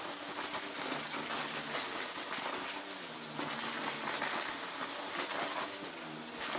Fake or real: real